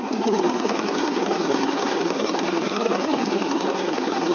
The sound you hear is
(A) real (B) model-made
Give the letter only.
B